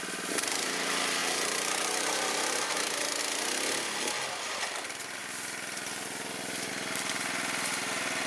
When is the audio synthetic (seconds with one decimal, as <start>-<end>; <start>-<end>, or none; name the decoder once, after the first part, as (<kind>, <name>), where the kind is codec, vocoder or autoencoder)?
1.2-3.2 (vocoder, BigVGAN v2)

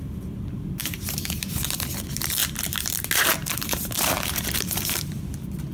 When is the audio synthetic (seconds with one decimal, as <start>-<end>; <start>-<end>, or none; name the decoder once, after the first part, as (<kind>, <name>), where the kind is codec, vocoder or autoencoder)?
0.8-1.4 (vocoder, BigVGAN v2); 3.4-5.1

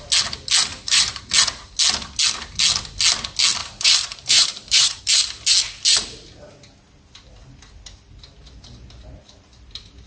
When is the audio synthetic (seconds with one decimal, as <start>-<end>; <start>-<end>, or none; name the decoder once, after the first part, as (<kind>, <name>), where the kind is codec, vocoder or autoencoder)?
0.7-1.2 (vocoder, BigVGAN v2); 3.6-5.0

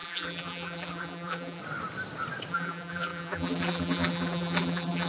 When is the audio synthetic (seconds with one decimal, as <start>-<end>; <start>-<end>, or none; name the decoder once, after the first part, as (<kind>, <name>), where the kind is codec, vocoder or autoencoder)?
0.0-1.6 (vocoder, BigVGAN v2); 2.5-5.1

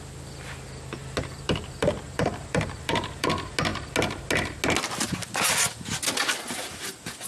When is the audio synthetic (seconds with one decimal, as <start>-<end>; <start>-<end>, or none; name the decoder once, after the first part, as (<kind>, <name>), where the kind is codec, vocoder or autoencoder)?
1.0-3.3 (vocoder, BigVGAN v2)

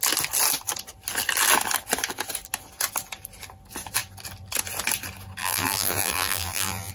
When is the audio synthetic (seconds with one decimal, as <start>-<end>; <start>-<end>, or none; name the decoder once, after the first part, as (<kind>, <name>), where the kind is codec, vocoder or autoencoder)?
5.4-6.9 (vocoder, BigVGAN v2)

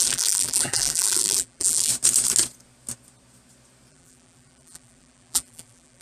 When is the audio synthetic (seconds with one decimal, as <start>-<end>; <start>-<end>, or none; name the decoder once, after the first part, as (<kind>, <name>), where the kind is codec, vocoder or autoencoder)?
0.0-1.9 (vocoder, BigVGAN v2); 3.9-6.0